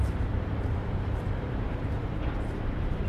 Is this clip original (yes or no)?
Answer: no